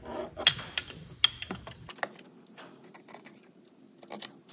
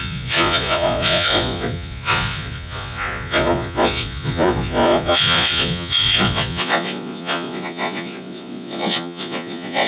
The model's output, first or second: second